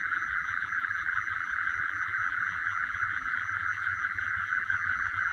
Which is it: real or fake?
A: fake